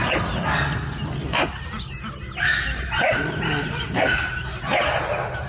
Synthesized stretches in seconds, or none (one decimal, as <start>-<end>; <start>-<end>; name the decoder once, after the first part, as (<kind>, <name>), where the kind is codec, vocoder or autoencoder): 2.5-4.3 (vocoder, BigVGAN v2)

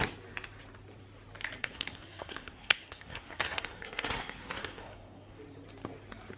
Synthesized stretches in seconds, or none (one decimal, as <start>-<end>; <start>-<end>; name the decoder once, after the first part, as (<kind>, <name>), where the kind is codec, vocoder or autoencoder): 1.6-5.4 (codec, SNAC)

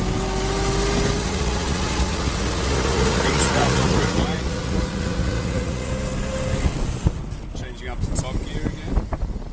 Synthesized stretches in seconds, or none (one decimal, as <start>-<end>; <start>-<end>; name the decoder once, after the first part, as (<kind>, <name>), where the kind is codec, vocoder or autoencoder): 1.2-5.9 (vocoder, Vocos)

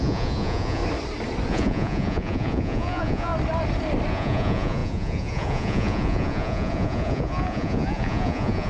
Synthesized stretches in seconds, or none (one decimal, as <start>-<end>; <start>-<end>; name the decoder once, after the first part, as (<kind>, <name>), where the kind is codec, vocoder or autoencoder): 0.0-0.8 (vocoder, Vocos); 1.5-3.3; 4.1-8.7